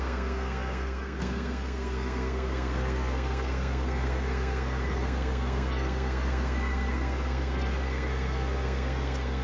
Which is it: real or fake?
fake